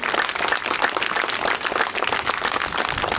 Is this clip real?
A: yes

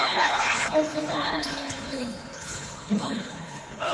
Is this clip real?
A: no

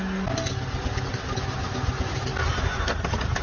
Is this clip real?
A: yes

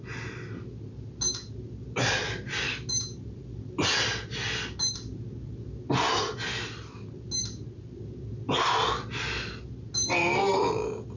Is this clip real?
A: yes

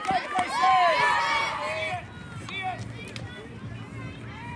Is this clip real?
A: yes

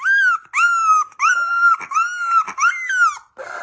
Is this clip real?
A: yes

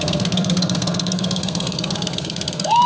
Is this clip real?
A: no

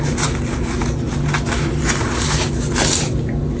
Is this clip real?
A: yes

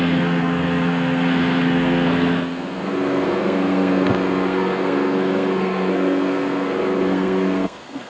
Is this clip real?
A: no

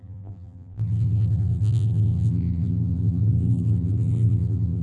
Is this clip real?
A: no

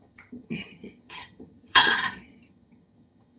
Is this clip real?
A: no